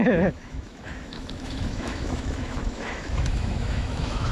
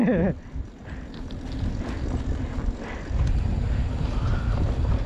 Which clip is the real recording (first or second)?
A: second